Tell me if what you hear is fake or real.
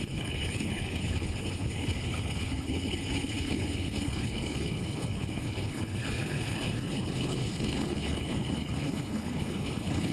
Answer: fake